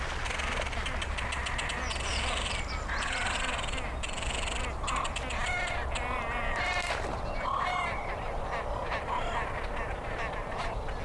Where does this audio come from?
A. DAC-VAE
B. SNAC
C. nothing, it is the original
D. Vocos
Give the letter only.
C